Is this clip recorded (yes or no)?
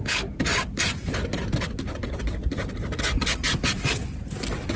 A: yes